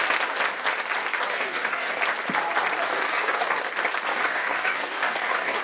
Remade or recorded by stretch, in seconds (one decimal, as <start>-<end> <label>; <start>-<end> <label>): 0.0-1.3 recorded; 1.3-2.0 remade; 2.0-2.9 recorded; 2.9-3.6 remade; 3.6-4.1 recorded; 4.1-5.6 remade